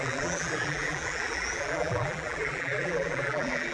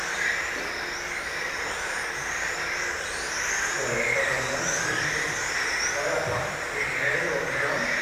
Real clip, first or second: second